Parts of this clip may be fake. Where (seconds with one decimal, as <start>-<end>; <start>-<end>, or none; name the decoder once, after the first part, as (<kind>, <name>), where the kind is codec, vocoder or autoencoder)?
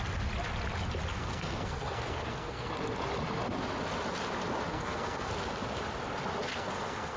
1.1-2.7 (codec, SNAC); 4.7-5.3; 6.5-7.2